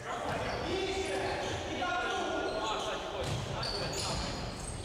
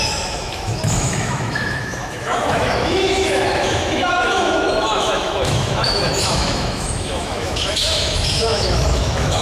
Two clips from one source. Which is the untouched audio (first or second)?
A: first